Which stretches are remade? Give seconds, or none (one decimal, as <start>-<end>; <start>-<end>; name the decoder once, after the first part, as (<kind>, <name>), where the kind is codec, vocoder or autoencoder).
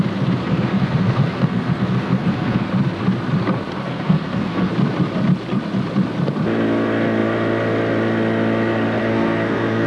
0.4-2.7 (codec, SNAC); 3.8-4.7; 9.0-9.9